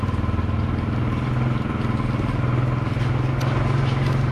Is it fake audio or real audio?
real